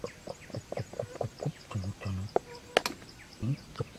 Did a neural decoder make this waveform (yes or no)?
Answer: no